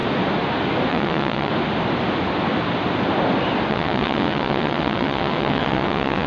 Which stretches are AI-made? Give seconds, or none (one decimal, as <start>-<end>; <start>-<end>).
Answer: 0.9-1.5; 3.7-6.3